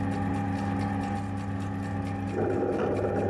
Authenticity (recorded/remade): recorded